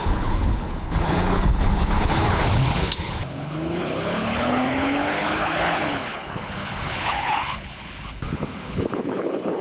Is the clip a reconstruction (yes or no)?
yes